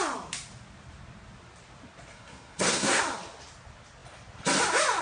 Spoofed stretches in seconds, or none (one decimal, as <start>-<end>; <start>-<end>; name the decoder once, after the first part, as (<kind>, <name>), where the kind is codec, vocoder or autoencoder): 2.1-3.0 (codec, SNAC)